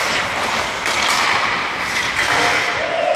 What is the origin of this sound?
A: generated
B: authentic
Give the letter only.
B